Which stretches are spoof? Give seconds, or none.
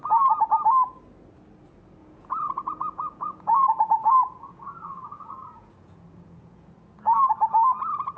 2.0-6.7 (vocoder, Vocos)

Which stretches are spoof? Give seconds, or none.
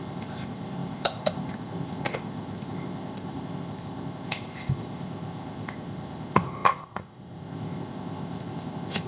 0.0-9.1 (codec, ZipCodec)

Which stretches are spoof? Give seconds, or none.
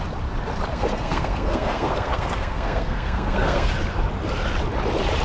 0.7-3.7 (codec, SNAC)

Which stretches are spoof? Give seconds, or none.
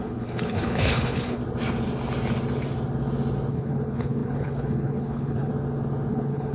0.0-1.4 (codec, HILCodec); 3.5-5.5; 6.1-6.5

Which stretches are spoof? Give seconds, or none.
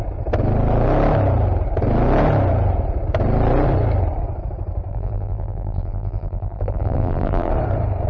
4.9-7.5 (vocoder, BigVGAN v2)